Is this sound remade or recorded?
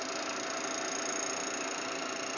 recorded